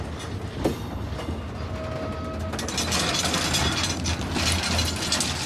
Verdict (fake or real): real